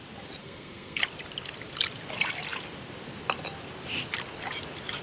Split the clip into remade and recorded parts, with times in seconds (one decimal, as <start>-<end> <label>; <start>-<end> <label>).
0.0-0.4 recorded; 0.4-1.0 remade; 1.0-5.0 recorded